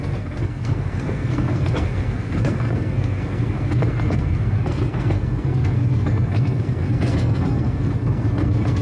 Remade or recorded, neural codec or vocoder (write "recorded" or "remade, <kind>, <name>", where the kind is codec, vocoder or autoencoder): remade, codec, SNAC